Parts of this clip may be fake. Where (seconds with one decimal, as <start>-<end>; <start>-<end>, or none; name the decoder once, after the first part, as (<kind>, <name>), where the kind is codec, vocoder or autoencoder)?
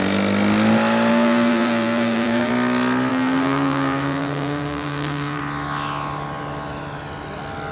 1.1-2.5 (vocoder, BigVGAN v2); 3.1-5.4